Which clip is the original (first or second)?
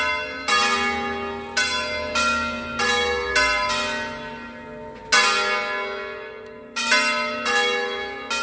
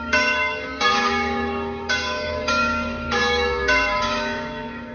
first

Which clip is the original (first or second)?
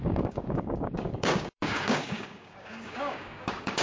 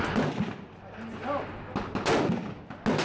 second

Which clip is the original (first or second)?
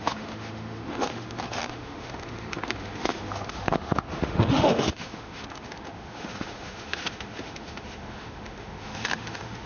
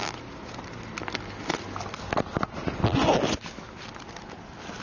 second